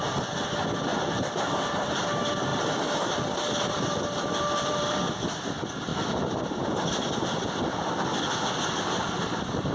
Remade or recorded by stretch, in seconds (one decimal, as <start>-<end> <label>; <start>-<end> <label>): 0.0-0.9 recorded; 0.9-1.9 remade; 1.9-2.5 recorded; 2.5-5.0 remade; 5.0-9.7 recorded